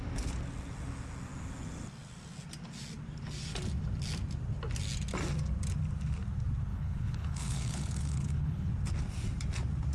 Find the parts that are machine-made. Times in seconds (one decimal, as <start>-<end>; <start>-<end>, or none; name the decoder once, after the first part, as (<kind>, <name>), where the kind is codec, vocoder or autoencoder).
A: 6.7-8.7 (codec, HILCodec)